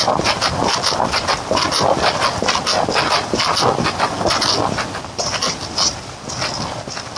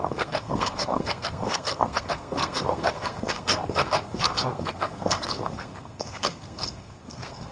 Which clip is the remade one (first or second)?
second